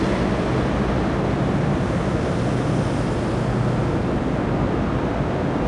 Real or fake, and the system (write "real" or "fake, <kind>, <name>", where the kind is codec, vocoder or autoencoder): real